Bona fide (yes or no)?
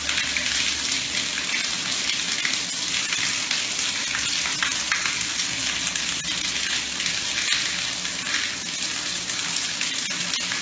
yes